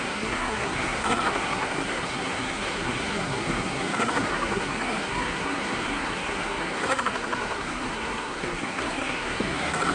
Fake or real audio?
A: fake